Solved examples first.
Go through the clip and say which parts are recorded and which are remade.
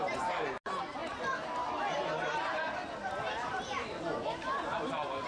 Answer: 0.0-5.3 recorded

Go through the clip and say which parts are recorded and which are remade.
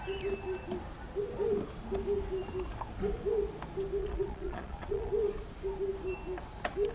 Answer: 0.0-4.0 recorded; 4.0-5.1 remade; 5.1-6.9 recorded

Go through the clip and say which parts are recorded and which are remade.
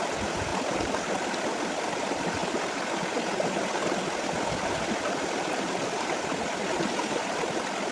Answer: 0.0-7.9 recorded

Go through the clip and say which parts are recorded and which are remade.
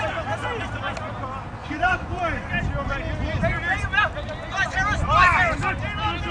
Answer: 0.0-1.6 recorded; 1.6-2.2 remade; 2.2-6.3 recorded